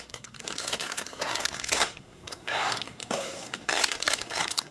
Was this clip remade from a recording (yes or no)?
yes